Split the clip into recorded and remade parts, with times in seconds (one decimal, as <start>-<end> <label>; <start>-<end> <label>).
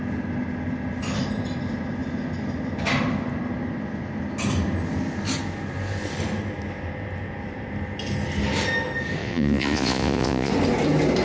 0.0-9.2 recorded; 9.2-10.5 remade; 10.5-11.2 recorded